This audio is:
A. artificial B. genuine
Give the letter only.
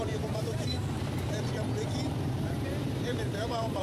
A